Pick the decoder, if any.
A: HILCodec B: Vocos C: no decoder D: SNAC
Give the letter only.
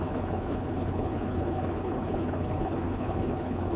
A